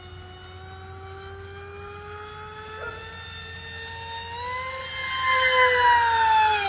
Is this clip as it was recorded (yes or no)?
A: yes